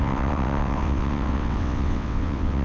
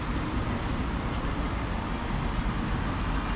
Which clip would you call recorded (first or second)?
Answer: second